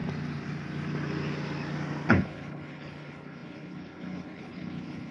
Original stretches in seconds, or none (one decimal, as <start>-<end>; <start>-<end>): 0.0-2.1